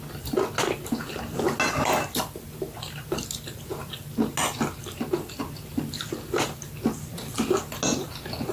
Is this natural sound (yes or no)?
yes